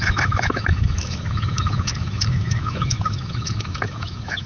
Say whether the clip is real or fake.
fake